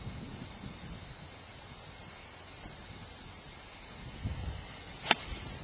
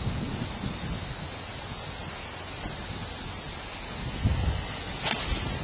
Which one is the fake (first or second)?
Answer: first